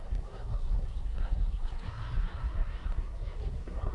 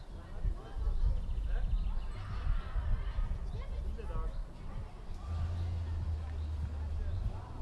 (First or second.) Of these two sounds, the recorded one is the second